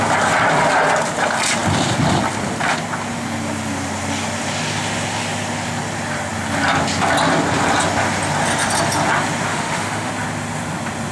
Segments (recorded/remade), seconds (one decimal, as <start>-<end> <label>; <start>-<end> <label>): 0.0-9.5 recorded; 9.5-10.1 remade; 10.1-11.1 recorded